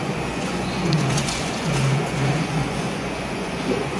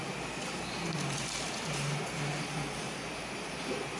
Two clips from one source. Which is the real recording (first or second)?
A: second